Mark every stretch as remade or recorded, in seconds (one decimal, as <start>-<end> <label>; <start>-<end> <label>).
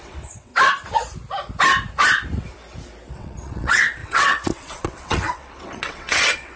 0.0-0.5 remade; 0.5-3.1 recorded; 3.1-6.6 remade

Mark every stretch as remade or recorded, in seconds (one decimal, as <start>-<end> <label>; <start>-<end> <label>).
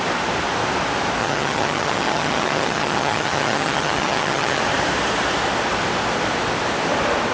0.0-1.2 recorded; 1.2-4.6 remade; 4.6-7.3 recorded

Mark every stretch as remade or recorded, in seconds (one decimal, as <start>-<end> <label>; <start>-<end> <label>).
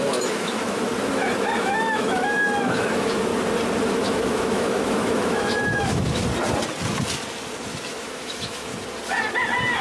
0.0-0.9 remade; 0.9-1.6 recorded; 1.6-3.3 remade; 3.3-3.9 recorded; 3.9-6.2 remade; 6.2-7.9 recorded; 7.9-8.7 remade; 8.7-9.8 recorded